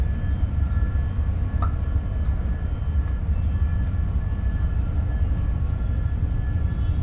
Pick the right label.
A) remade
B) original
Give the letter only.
B